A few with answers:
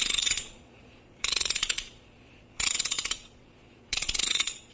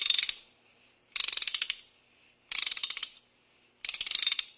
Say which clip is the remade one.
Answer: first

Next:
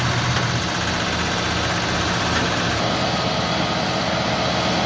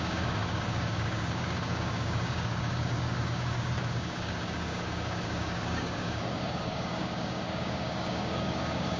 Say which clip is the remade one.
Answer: second